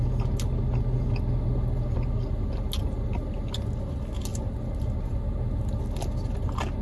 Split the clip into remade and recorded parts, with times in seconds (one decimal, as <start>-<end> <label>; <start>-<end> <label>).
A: 0.0-6.8 recorded